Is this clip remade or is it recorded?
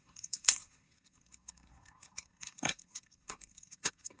remade